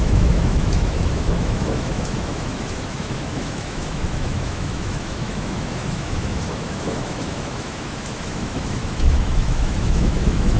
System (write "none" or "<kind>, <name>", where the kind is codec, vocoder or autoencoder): autoencoder, DAC-VAE